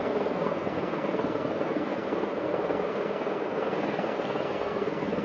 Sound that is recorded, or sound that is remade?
remade